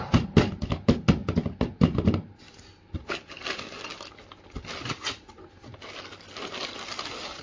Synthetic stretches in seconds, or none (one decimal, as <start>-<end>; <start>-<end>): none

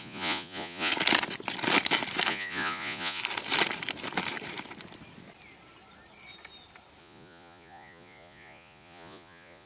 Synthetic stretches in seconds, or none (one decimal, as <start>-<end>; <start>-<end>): 0.0-0.9; 2.3-3.2; 7.0-9.7

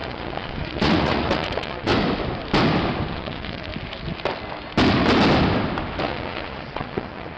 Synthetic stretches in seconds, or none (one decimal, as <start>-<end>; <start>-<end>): 0.0-1.9; 3.1-3.7; 6.0-7.4

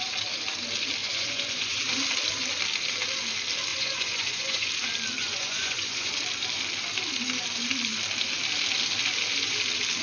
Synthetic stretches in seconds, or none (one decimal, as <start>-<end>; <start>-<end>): 1.0-1.8; 3.7-4.7; 5.2-6.1